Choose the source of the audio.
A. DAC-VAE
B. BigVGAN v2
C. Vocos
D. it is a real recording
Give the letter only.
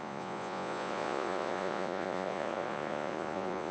C